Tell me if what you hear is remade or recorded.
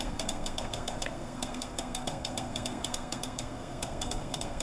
remade